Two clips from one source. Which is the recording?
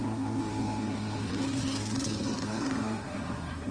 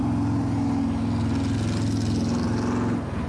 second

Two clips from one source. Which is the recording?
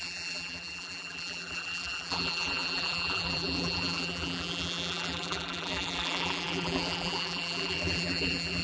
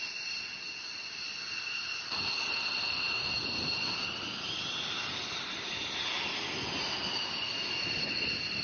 second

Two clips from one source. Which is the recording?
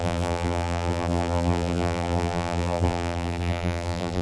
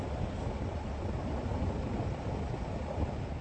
second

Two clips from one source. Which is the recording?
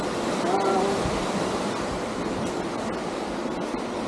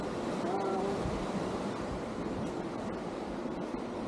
first